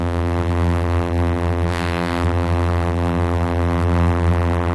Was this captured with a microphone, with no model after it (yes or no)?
no